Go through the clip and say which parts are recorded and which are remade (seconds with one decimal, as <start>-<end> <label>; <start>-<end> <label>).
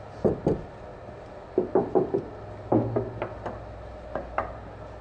0.0-5.0 recorded